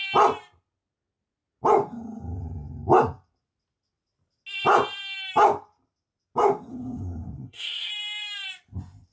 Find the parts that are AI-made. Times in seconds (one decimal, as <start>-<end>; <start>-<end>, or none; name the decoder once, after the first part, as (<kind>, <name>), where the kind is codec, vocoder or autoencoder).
6.7-7.9 (codec, SNAC)

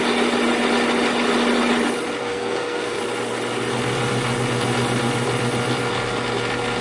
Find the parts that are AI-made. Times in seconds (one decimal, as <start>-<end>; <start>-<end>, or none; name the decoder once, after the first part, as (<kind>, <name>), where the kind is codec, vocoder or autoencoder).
2.2-3.0 (codec, SNAC)

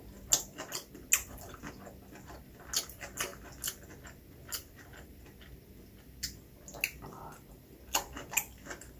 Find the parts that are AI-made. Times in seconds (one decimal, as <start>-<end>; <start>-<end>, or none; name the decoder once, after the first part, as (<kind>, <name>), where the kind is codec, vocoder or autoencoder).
none

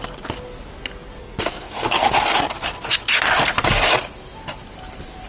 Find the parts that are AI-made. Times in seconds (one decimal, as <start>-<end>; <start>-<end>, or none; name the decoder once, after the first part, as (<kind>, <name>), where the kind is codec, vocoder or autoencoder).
1.2-2.1 (codec, SNAC)

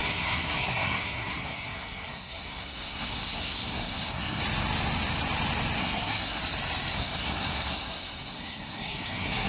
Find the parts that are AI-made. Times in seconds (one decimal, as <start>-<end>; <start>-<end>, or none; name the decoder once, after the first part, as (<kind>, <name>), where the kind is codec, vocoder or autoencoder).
0.0-4.4 (codec, SNAC); 5.8-6.4; 6.9-9.5

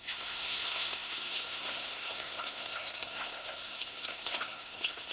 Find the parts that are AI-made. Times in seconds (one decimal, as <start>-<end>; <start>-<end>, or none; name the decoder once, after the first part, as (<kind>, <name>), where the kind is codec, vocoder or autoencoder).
0.0-5.1 (codec, SNAC)